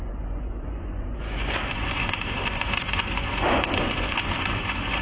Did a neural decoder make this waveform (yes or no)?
yes